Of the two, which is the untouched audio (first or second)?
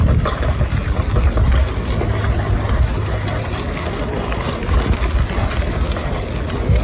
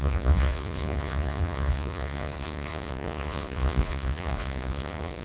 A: first